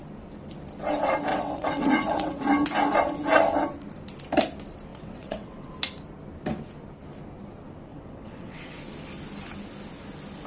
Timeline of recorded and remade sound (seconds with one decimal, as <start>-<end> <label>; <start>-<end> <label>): 0.0-1.3 recorded; 1.3-2.4 remade; 2.4-4.9 recorded; 4.9-5.7 remade; 5.7-7.9 recorded; 7.9-8.7 remade; 8.7-10.5 recorded